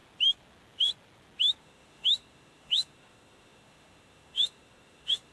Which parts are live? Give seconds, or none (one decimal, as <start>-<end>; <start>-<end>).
0.0-1.6